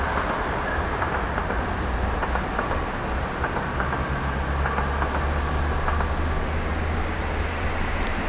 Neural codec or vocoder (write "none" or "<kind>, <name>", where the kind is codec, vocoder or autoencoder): none